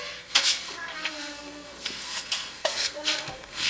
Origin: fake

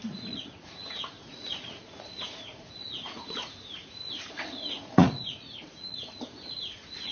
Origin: fake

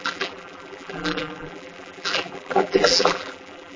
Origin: fake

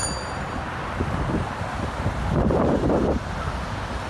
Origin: real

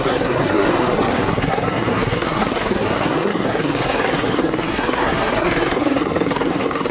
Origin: fake